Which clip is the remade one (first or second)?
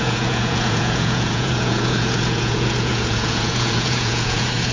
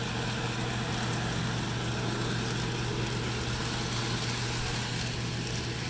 first